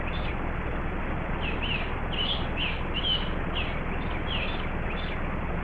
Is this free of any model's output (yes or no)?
yes